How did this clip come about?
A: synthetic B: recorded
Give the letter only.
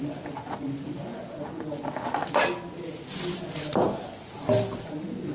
B